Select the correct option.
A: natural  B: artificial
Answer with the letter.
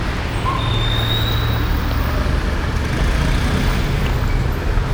A